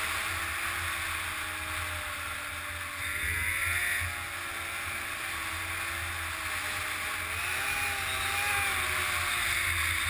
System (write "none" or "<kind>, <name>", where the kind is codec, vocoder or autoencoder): none